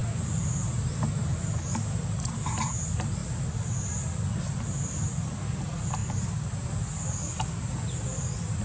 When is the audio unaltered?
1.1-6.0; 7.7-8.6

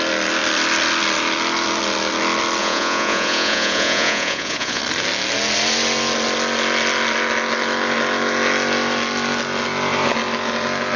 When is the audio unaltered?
0.0-2.6; 4.8-11.0

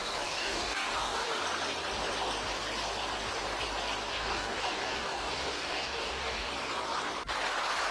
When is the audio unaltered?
1.4-4.1; 6.5-7.9